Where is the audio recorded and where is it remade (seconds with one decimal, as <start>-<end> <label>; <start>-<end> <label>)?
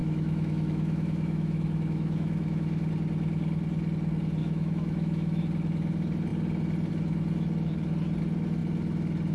0.0-2.9 remade; 2.9-4.4 recorded; 4.4-5.4 remade; 5.4-9.3 recorded